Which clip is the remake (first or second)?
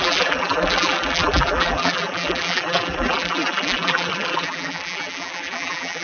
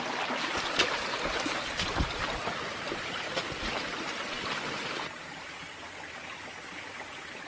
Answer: first